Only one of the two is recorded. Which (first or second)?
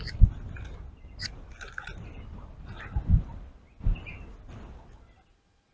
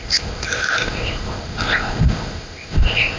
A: first